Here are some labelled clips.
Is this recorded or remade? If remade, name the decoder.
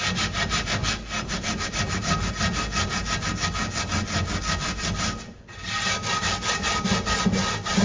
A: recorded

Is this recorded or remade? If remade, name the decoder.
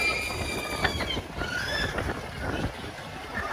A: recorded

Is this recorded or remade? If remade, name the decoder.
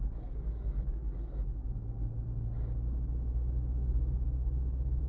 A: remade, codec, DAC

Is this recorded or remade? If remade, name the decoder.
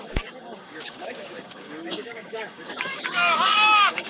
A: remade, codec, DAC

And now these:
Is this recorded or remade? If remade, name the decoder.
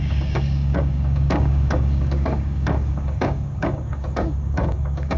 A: remade, codec, DAC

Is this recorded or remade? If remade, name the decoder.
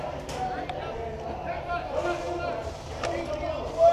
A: recorded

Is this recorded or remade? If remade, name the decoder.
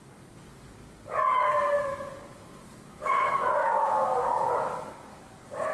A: remade, codec, DAC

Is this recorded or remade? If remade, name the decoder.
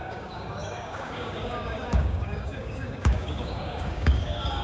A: remade, codec, DAC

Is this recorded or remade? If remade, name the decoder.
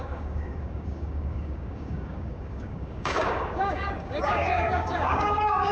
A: remade, codec, DAC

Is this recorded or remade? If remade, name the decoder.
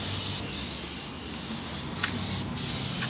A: recorded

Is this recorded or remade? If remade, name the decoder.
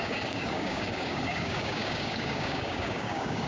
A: remade, codec, DAC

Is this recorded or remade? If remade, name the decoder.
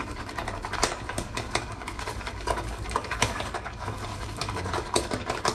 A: remade, codec, DAC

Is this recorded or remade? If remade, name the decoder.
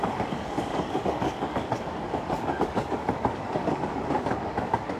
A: remade, codec, DAC